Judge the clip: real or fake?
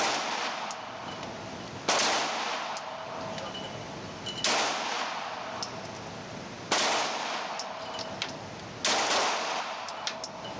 real